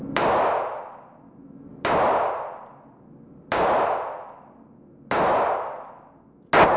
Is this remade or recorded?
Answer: recorded